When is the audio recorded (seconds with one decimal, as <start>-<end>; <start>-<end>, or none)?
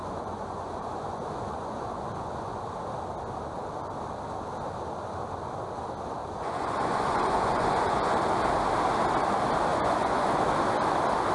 2.6-6.2; 8.2-9.7; 10.4-11.3